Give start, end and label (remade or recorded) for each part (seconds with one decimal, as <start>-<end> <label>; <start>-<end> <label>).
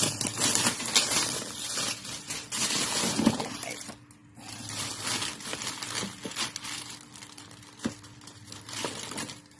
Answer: 0.0-9.6 recorded